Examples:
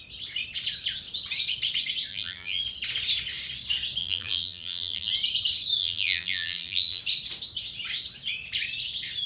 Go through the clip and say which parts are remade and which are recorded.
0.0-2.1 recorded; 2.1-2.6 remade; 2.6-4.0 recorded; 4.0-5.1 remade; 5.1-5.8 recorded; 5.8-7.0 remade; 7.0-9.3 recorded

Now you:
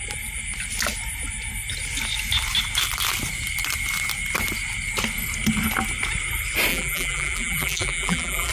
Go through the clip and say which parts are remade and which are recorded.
0.0-6.7 recorded; 6.7-8.5 remade

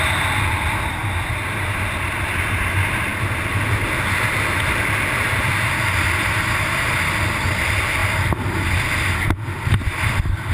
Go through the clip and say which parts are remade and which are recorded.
0.0-10.5 recorded